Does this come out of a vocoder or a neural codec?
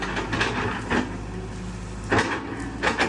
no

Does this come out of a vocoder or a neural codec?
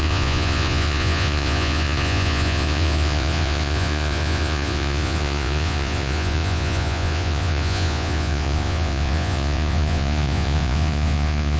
yes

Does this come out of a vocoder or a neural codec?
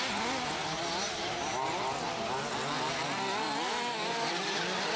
no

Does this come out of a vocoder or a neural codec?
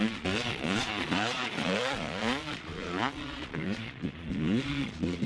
yes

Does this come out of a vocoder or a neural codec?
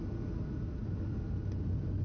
no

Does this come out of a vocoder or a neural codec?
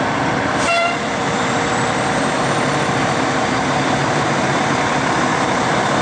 yes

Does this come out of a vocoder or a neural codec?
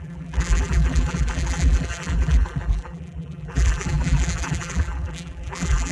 yes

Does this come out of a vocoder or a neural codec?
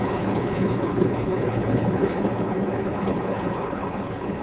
yes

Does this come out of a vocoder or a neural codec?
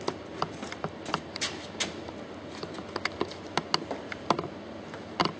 no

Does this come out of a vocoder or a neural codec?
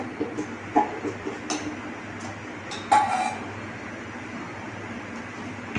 no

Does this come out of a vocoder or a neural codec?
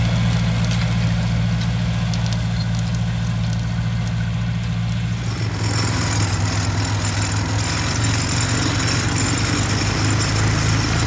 no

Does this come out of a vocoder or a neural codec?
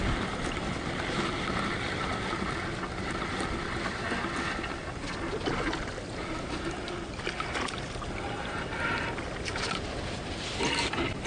no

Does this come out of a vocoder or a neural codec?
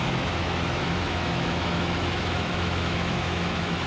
yes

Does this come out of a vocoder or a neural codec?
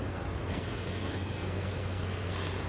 yes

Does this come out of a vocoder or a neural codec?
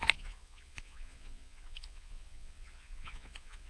yes